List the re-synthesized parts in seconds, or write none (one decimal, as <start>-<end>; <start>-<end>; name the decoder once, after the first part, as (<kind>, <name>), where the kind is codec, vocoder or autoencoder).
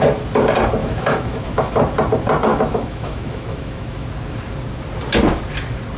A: 0.8-1.7 (autoencoder, DAC-VAE); 2.5-4.1